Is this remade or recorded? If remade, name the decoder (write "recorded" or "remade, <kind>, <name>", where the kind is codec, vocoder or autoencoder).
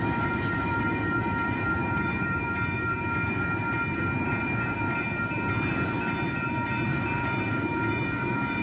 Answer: remade, vocoder, BigVGAN v2